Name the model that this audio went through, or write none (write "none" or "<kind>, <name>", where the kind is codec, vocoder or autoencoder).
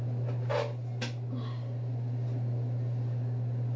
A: none